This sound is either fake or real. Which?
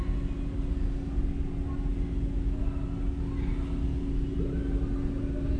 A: real